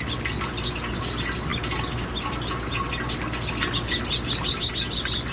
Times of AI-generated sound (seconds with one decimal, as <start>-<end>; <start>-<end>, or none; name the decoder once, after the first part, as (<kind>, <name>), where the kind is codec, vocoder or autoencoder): none